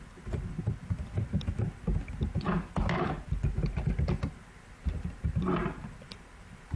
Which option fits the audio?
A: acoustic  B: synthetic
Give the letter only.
A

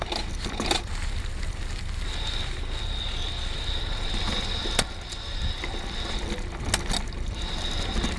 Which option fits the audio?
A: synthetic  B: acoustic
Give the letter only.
B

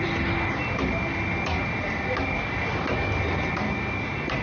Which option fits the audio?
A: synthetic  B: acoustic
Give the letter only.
B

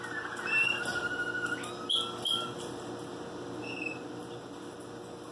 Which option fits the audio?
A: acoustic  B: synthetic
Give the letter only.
A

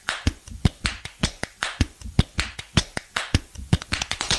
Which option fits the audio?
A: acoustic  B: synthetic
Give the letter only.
B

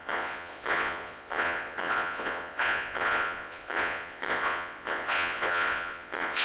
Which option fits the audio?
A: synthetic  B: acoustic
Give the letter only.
A